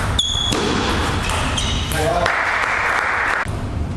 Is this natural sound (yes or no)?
yes